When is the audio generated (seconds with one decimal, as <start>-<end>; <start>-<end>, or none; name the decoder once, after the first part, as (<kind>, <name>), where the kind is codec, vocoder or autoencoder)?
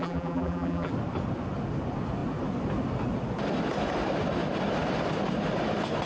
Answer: 0.0-0.9 (vocoder, BigVGAN v2)